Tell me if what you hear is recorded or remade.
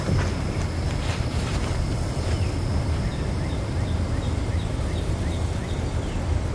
recorded